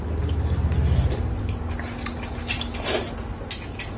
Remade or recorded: recorded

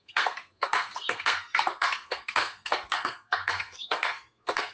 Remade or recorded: remade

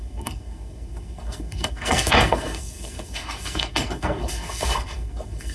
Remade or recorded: remade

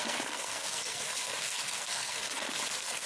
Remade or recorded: remade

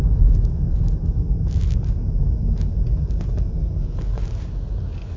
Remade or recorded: recorded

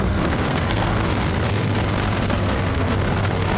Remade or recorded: remade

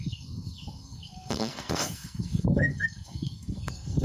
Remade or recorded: remade